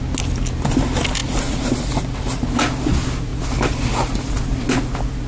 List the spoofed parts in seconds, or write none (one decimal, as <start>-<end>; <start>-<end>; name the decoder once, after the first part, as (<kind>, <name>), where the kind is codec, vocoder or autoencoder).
none